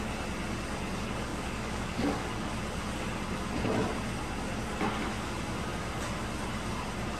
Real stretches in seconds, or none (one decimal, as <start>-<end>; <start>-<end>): 0.0-1.3; 2.5-7.2